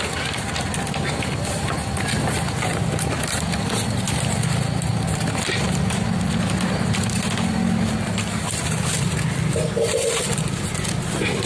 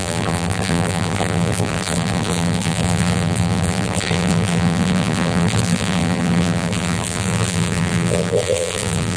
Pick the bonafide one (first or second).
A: first